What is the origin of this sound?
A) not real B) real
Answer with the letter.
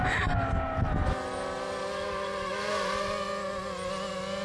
B